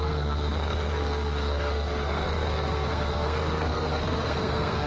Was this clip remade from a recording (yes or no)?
yes